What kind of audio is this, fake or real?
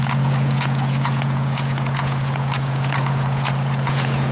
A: fake